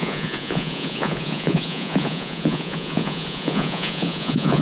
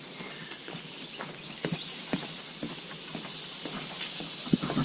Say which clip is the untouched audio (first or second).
second